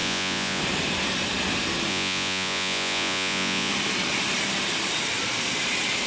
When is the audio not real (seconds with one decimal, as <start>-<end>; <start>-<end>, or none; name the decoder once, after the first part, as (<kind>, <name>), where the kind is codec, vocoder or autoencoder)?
0.0-0.6 (vocoder, Vocos); 1.9-3.7